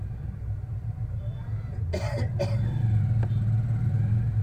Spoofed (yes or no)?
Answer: no